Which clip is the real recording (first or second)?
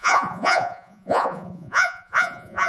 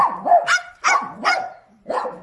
second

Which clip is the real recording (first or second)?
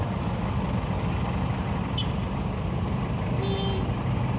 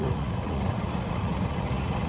first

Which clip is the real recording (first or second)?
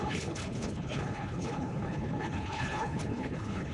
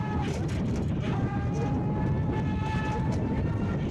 second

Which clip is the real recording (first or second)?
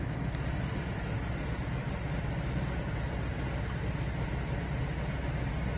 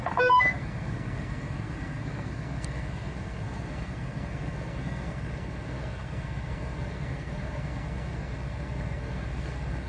first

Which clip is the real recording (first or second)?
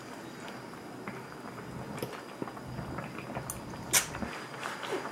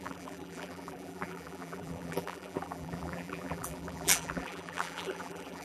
first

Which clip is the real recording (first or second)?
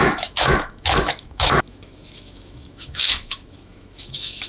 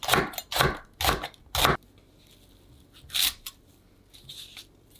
second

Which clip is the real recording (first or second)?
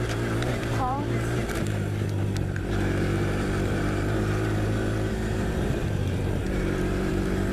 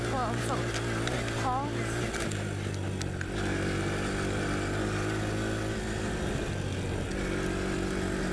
second